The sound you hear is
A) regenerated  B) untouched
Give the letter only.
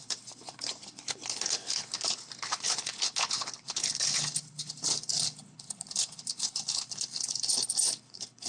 A